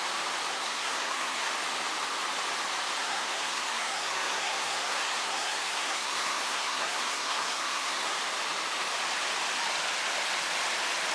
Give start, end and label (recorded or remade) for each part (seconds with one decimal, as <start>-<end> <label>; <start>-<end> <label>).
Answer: 0.0-0.5 recorded; 0.5-1.5 remade; 1.5-3.0 recorded; 3.0-8.1 remade; 8.1-11.1 recorded